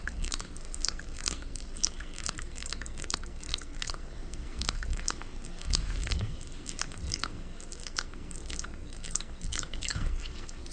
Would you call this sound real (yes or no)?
no